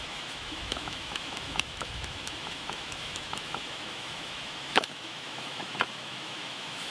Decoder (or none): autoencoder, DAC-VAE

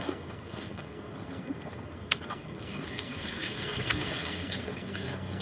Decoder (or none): codec, SNAC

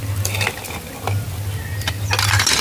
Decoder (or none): none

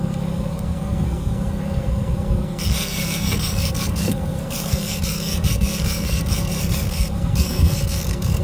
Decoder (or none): codec, SNAC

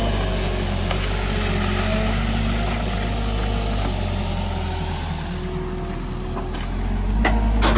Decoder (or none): none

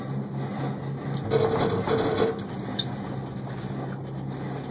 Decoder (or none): none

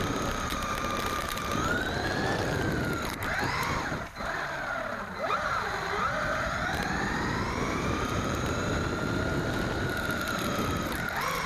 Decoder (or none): vocoder, BigVGAN v2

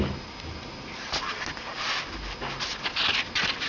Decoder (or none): none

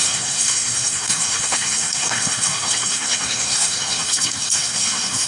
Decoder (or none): codec, SNAC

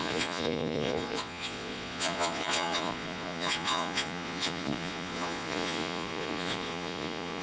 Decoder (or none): vocoder, Vocos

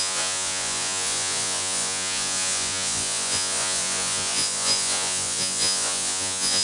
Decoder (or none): vocoder, Vocos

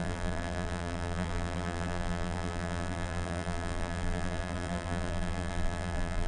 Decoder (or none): vocoder, BigVGAN v2